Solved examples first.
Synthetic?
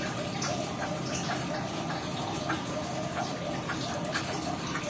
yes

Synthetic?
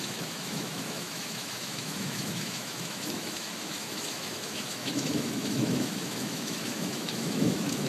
yes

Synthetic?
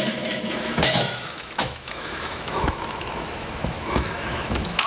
yes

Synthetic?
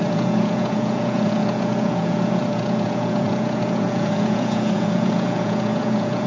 yes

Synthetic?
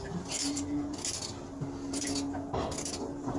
no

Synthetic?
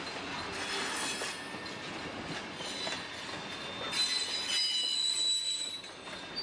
no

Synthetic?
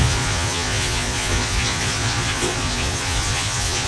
yes